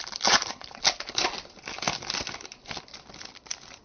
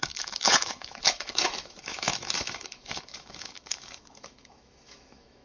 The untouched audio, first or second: first